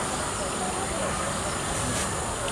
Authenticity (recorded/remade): recorded